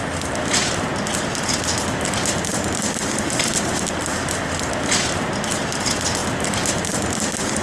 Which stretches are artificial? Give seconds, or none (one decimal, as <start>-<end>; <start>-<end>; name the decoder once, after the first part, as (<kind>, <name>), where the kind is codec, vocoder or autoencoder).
none

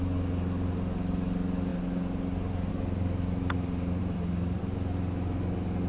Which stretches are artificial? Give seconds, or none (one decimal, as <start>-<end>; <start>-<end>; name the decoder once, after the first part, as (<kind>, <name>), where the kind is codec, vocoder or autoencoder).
4.0-4.6 (vocoder, BigVGAN v2)

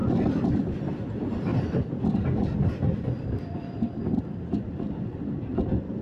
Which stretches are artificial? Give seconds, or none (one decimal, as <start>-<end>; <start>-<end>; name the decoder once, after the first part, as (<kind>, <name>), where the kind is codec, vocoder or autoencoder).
0.0-0.9 (vocoder, BigVGAN v2); 1.5-4.2

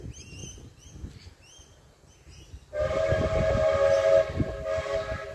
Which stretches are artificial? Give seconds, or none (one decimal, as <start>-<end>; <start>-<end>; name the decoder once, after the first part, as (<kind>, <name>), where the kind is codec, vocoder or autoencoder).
none